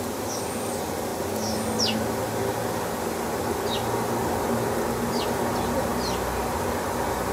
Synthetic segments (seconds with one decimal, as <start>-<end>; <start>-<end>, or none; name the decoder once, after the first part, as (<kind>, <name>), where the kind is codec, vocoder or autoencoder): none